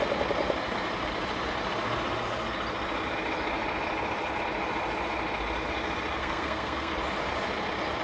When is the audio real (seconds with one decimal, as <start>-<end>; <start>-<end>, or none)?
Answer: 0.0-6.2; 6.9-8.0

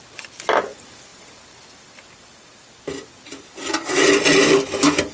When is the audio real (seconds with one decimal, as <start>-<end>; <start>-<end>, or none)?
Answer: 0.0-5.1

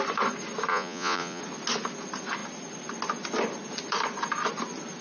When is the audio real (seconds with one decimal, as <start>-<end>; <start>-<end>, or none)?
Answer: 0.0-0.7; 1.4-5.0